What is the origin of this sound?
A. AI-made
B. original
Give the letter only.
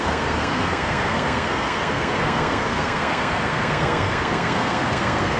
A